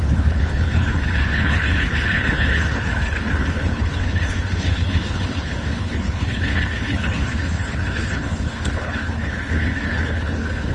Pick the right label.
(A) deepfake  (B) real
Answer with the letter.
A